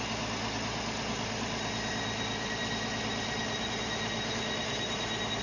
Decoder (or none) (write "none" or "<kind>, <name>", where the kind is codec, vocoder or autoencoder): none